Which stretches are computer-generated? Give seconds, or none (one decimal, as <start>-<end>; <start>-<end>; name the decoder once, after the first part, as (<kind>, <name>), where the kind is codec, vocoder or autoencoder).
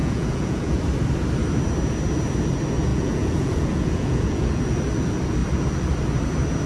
0.0-0.8 (vocoder, Vocos); 2.9-4.6